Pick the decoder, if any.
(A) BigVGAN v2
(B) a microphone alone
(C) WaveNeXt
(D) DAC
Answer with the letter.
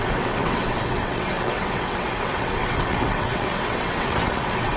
C